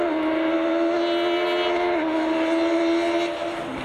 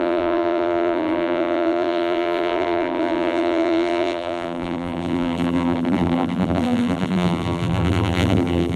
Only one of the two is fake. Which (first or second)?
second